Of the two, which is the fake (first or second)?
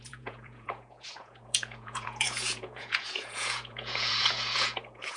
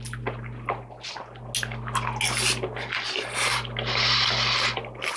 first